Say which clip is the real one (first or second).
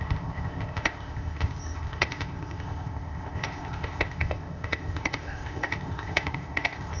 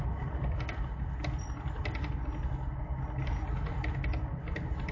second